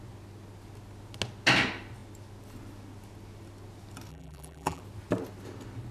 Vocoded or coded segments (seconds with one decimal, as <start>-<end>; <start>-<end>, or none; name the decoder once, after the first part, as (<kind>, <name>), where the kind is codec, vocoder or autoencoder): 4.1-4.8 (vocoder, BigVGAN v2)